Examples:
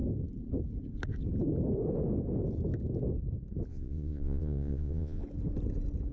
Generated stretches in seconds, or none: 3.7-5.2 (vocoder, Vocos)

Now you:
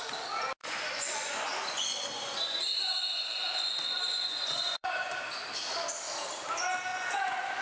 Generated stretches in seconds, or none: 0.6-5.2 (vocoder, Vocos); 6.9-7.6

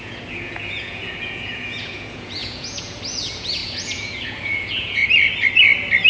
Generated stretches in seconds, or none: 0.0-5.0 (vocoder, Vocos)

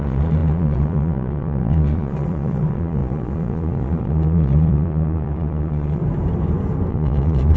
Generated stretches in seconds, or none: 0.0-6.0 (vocoder, Vocos); 6.9-7.6

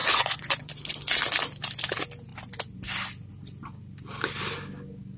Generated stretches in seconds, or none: 0.0-0.7 (vocoder, Vocos)

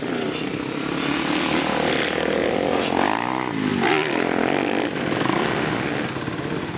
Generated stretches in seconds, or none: none

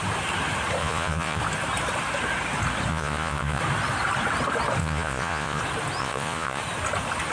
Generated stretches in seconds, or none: 0.8-1.4 (vocoder, Vocos); 2.9-3.6; 4.8-5.6; 6.0-6.6

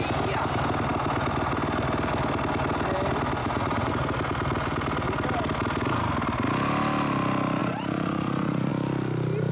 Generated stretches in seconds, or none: 3.4-3.9 (vocoder, Vocos); 7.6-8.7